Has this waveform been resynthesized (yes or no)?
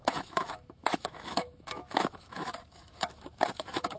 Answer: yes